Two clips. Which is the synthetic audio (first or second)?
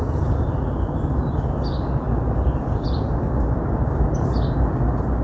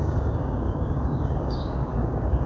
second